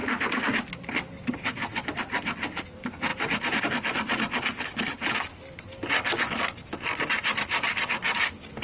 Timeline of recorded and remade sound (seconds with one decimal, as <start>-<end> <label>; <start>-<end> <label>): 0.0-0.7 remade; 0.7-3.1 recorded; 3.1-3.6 remade; 3.6-8.6 recorded